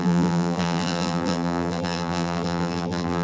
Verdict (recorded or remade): remade